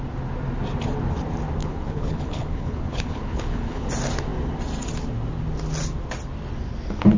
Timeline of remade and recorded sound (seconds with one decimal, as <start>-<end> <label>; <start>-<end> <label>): 0.0-1.6 recorded; 1.6-3.9 remade; 3.9-7.2 recorded